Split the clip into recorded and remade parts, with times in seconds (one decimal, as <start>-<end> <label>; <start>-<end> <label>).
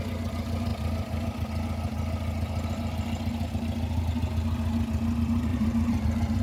0.0-5.5 recorded; 5.5-6.4 remade